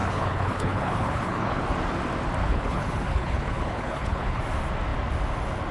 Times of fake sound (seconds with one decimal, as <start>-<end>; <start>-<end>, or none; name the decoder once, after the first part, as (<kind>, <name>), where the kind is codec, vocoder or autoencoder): 0.0-1.6 (codec, HILCodec); 2.4-4.4